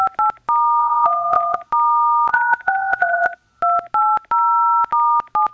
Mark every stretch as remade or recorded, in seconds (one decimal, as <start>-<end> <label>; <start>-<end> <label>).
0.0-0.8 recorded; 0.8-1.7 remade; 1.7-2.3 recorded; 2.3-3.6 remade; 3.6-5.5 recorded